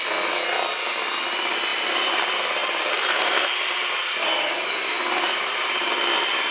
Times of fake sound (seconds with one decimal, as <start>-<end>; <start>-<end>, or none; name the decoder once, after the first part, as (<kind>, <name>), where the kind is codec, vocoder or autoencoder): 1.7-2.2 (vocoder, BigVGAN v2); 2.6-5.9